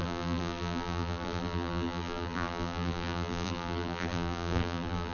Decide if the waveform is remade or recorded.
remade